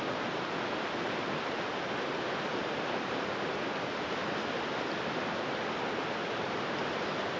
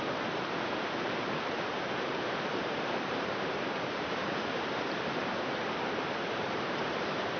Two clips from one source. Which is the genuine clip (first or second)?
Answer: first